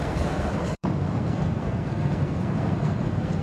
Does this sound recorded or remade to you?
remade